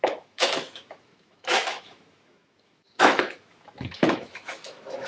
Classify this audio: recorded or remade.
remade